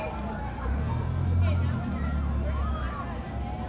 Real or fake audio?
real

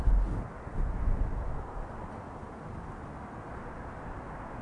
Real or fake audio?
real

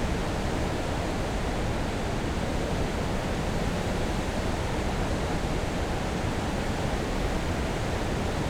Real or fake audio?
real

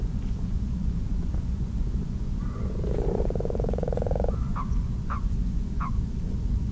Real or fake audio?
fake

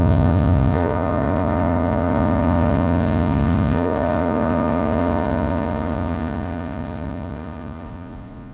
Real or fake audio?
fake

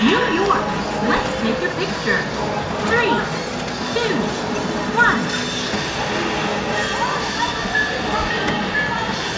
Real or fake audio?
real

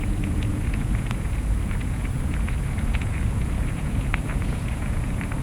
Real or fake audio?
fake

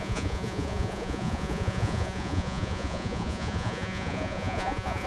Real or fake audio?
fake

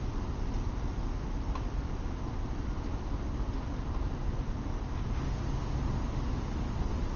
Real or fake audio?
real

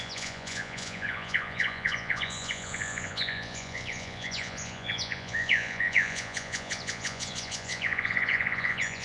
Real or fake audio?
fake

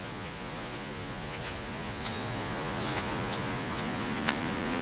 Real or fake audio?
fake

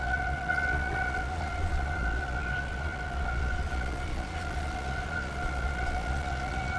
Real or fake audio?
fake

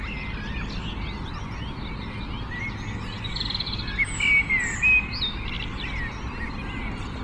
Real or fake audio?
real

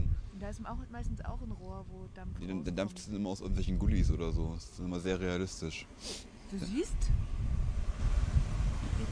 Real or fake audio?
real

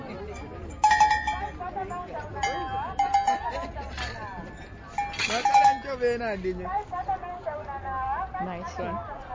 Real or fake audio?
real